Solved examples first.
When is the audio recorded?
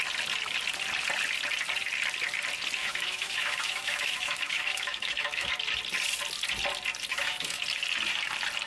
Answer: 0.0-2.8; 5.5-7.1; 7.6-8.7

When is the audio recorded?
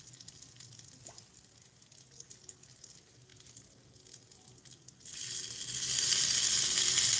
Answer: 0.0-7.2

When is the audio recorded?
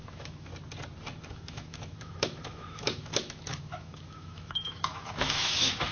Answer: 0.5-1.3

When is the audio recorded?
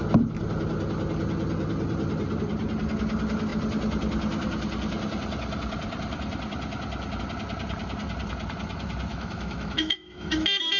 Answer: 0.0-9.1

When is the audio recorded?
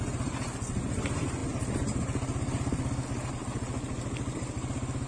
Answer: 0.0-5.1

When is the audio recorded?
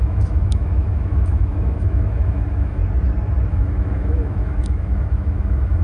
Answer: 2.8-3.5